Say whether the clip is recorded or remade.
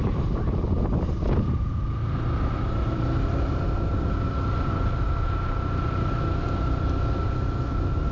recorded